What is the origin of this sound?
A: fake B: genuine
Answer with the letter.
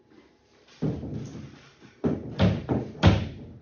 B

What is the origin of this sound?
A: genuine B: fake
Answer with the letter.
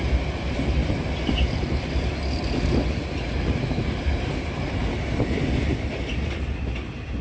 A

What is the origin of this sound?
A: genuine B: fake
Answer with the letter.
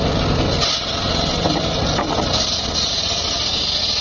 A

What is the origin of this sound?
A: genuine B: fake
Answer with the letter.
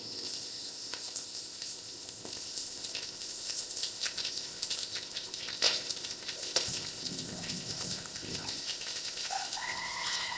B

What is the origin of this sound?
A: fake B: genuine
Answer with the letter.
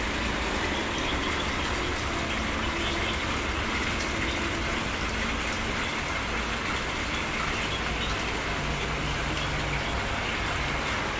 B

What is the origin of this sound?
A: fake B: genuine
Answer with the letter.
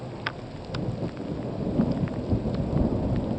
B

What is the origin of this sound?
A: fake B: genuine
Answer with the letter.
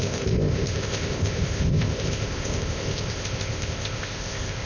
A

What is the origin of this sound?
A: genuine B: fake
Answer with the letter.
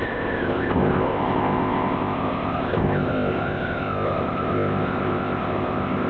B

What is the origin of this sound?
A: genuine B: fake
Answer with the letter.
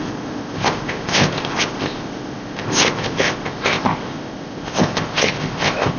B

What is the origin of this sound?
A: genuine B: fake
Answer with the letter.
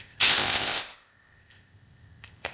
B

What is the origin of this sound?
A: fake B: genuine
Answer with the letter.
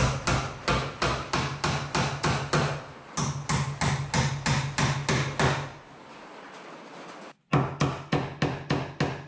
B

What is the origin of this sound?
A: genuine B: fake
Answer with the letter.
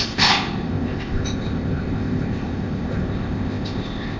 B